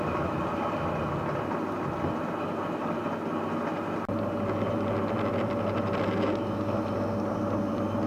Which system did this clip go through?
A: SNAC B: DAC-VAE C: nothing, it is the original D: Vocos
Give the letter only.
C